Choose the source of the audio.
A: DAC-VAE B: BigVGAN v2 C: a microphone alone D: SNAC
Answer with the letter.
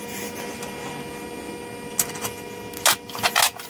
C